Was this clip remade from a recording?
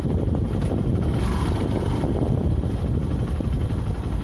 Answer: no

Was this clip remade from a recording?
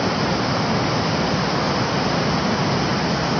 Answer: no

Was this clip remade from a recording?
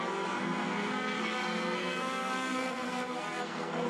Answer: yes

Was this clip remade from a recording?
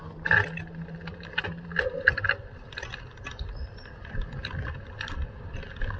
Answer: no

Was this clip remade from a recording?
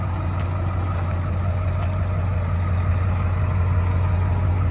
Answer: no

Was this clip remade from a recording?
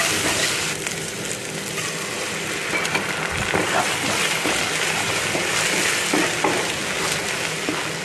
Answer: no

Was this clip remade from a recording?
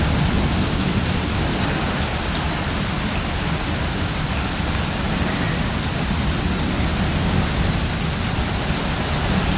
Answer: no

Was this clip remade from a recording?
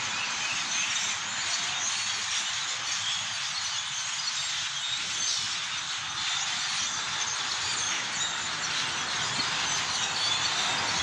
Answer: no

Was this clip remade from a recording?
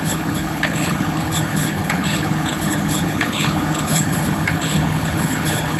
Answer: yes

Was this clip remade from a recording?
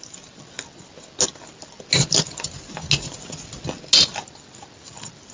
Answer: no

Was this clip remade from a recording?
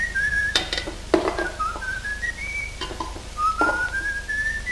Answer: yes